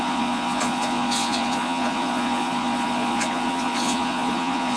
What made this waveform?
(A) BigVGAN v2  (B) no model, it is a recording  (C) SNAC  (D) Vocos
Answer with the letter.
D